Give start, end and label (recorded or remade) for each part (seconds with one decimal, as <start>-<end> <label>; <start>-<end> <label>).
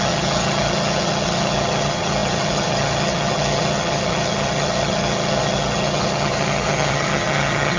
0.0-7.8 remade